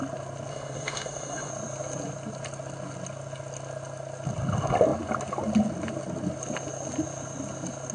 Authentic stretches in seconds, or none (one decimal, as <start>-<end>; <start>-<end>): 0.0-0.5; 1.5-7.9